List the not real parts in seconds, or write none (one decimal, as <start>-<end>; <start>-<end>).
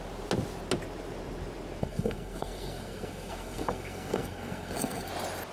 1.8-5.1